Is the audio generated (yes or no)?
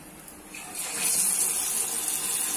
no